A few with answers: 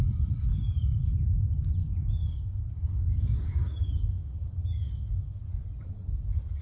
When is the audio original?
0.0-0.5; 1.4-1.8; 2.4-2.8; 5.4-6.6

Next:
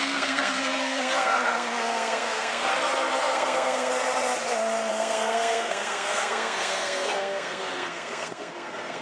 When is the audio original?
2.7-3.2; 3.9-4.9